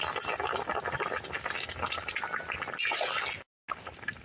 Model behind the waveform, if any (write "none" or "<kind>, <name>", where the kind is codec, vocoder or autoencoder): none